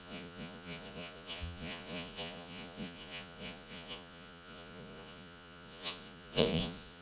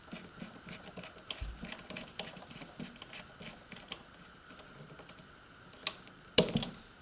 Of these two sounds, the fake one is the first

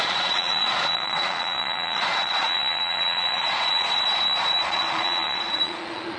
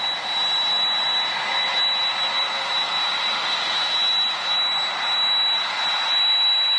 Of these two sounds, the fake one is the first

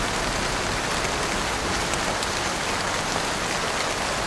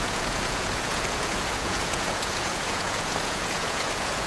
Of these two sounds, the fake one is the second